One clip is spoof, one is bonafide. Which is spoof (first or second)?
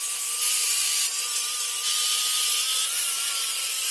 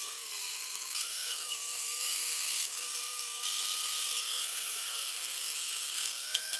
second